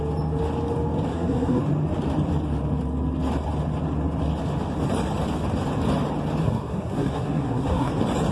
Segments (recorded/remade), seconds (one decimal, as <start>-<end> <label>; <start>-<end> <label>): 0.0-1.1 recorded; 1.1-1.6 remade; 1.6-6.4 recorded; 6.4-7.9 remade; 7.9-8.3 recorded